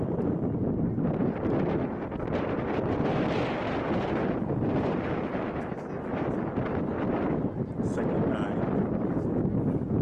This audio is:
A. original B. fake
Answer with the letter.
A